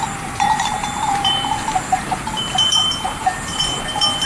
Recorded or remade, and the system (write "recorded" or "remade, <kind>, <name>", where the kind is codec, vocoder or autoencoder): remade, vocoder, BigVGAN v2